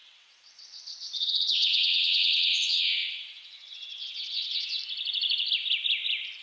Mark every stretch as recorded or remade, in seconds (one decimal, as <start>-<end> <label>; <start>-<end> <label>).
0.0-4.8 remade; 4.8-6.4 recorded